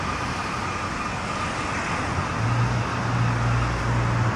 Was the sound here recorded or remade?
recorded